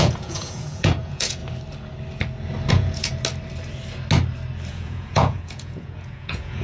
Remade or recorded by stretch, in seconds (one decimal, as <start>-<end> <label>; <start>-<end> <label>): 0.0-1.4 remade; 1.4-2.7 recorded; 2.7-3.1 remade; 3.1-4.7 recorded; 4.7-6.6 remade